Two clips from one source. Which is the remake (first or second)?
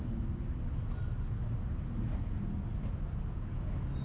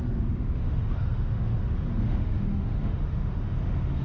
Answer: second